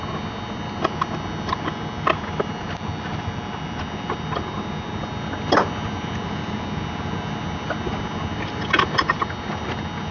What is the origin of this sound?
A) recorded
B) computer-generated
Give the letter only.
A